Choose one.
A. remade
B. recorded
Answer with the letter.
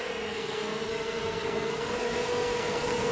A